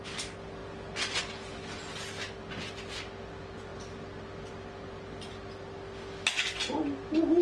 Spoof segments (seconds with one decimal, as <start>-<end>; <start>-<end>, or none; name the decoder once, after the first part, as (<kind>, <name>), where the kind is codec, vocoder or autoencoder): none